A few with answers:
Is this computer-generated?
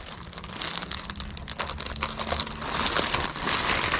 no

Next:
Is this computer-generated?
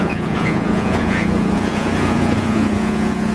yes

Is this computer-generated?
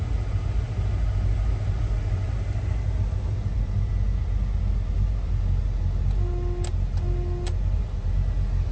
no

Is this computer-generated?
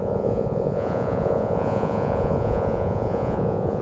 yes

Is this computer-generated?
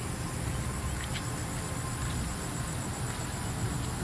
no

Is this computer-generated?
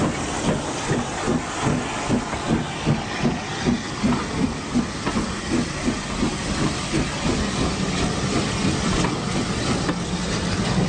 no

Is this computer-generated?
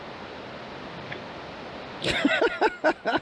no